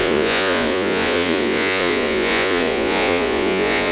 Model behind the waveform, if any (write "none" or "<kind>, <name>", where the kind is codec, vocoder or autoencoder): vocoder, Vocos